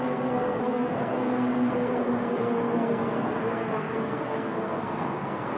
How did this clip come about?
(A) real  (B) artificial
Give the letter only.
B